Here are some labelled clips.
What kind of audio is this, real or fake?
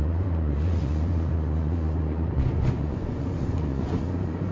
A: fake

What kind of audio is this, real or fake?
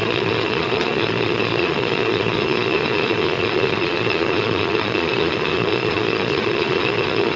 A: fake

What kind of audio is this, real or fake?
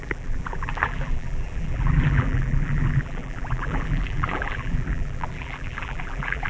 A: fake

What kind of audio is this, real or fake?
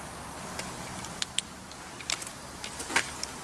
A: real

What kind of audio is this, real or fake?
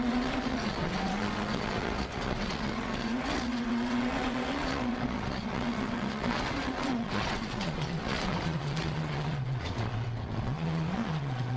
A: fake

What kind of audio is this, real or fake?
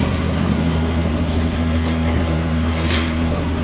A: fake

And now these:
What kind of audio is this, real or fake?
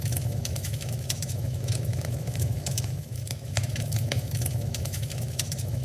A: fake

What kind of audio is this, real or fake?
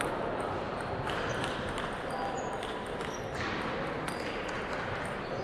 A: fake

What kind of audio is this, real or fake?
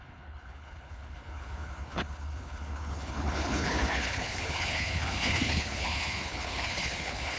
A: fake